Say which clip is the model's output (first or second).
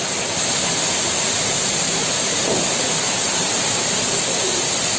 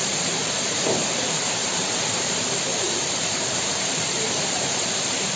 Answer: second